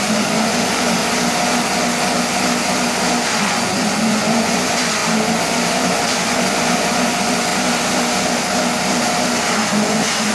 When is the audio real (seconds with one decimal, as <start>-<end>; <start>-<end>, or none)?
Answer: 1.0-3.4; 5.0-5.7; 7.5-9.5